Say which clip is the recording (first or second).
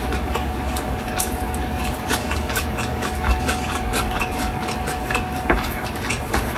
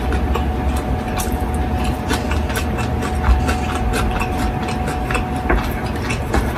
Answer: second